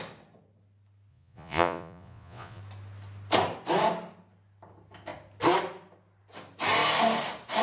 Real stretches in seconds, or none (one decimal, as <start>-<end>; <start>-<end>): 0.0-1.1; 2.6-7.6